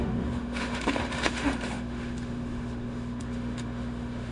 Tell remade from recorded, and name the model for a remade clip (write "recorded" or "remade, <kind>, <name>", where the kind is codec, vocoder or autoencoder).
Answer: remade, autoencoder, DAC-VAE